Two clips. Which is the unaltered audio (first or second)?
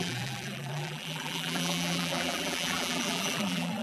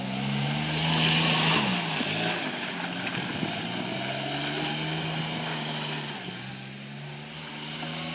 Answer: second